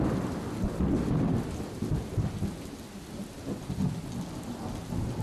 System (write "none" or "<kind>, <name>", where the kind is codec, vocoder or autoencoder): none